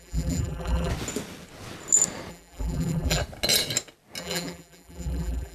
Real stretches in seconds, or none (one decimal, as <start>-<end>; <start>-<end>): 0.9-2.3; 3.2-4.2